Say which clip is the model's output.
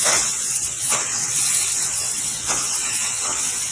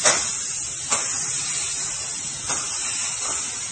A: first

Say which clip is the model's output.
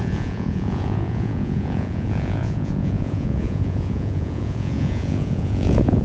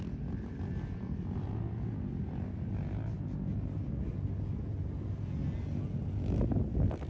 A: first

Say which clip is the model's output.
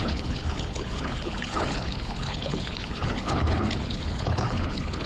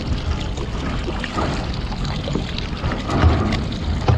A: first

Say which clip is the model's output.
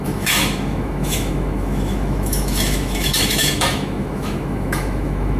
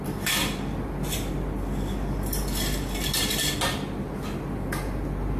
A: first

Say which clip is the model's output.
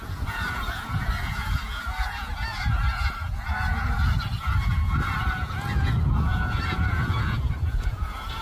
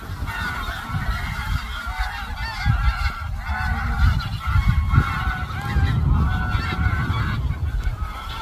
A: first